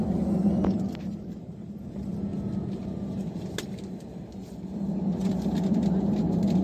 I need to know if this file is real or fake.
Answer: real